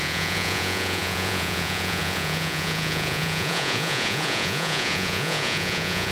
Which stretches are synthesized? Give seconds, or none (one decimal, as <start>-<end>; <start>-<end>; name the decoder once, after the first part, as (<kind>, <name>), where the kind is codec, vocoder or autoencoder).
0.0-6.1 (vocoder, Vocos)